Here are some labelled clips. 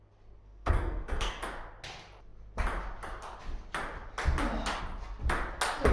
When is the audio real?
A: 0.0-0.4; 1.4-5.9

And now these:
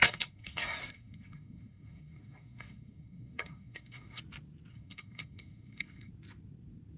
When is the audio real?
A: 4.2-4.7; 6.1-7.0

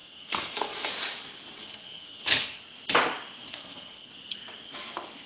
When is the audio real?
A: 0.9-1.6; 2.6-3.5; 4.1-5.3